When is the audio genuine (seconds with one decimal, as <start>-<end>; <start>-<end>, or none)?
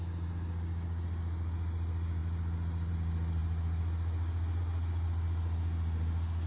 0.0-6.5